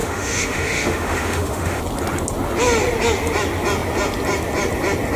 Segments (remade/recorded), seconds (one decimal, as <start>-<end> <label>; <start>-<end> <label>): 0.0-1.8 remade; 1.8-5.2 recorded